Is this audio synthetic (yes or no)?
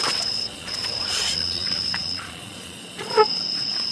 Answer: yes